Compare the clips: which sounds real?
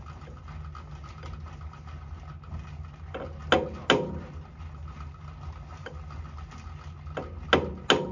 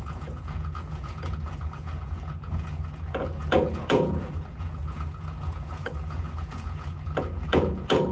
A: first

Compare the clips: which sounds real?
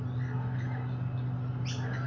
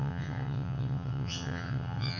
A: first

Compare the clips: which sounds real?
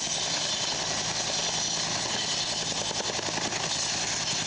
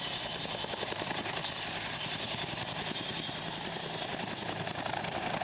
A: first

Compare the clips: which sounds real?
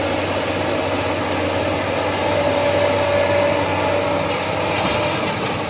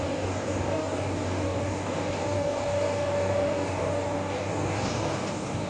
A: first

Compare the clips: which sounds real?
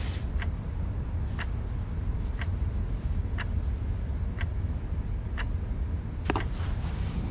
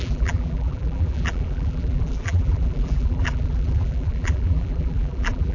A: first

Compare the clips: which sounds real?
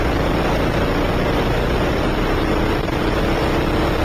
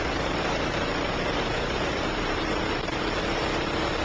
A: first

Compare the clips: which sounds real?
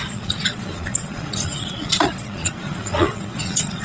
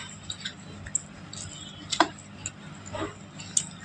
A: second